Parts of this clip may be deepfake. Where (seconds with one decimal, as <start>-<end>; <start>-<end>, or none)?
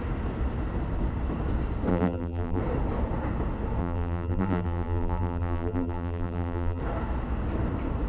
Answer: 1.9-2.6; 3.8-6.8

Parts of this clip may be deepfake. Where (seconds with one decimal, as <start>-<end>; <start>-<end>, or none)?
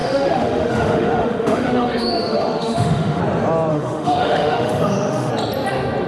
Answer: 0.0-3.2; 3.7-5.3